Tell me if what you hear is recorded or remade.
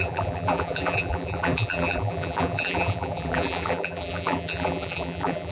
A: remade